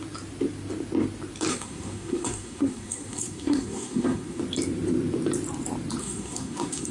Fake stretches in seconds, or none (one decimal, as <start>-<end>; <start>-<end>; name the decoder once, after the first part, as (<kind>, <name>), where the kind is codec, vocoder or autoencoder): 1.5-4.4 (codec, SNAC); 6.0-6.9